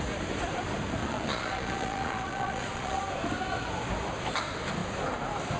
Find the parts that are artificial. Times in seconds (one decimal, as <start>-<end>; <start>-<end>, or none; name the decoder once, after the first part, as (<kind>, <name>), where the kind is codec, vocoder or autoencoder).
1.0-3.0 (vocoder, Vocos)